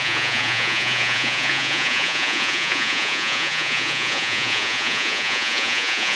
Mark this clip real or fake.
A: fake